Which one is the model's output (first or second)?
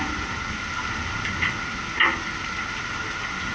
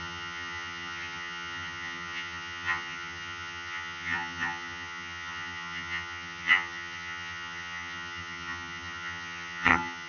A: second